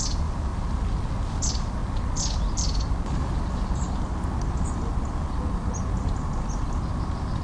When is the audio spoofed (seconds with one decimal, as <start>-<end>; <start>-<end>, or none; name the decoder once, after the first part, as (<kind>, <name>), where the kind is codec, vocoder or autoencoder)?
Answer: none